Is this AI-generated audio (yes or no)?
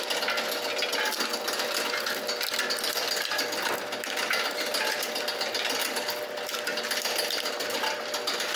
no